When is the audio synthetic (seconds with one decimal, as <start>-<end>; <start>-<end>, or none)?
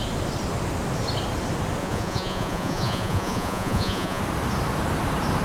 1.8-4.2